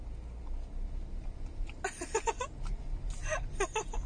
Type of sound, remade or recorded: recorded